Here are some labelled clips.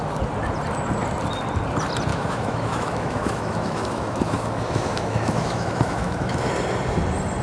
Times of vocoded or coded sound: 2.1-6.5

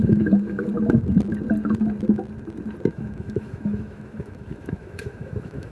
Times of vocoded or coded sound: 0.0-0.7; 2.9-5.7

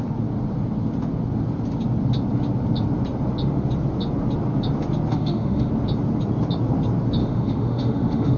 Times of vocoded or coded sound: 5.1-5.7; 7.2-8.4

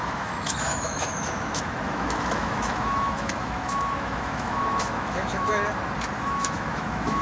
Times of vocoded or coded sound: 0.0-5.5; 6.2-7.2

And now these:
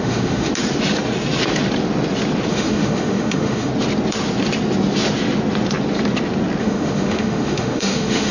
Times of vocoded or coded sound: 0.0-0.5; 2.5-3.7; 6.6-8.3

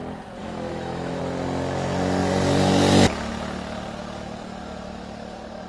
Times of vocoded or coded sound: 0.4-1.2